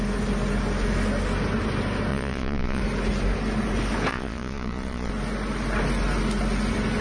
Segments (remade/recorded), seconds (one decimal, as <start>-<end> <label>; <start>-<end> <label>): 0.0-2.1 recorded; 2.1-2.8 remade; 2.8-4.1 recorded; 4.1-5.1 remade; 5.1-7.0 recorded